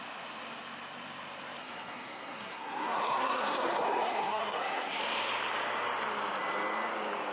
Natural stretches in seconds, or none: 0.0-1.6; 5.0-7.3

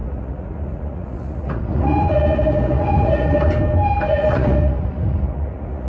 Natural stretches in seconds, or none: 3.5-4.1